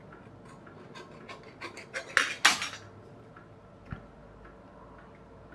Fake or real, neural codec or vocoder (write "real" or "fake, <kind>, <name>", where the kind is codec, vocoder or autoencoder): real